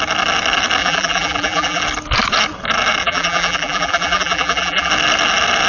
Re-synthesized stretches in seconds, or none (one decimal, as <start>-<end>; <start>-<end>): 0.8-1.8; 3.0-4.9